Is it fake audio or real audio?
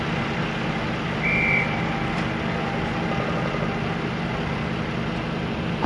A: real